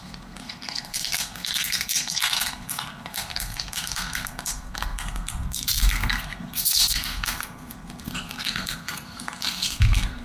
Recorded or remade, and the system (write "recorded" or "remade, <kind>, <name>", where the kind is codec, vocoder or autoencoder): remade, codec, SNAC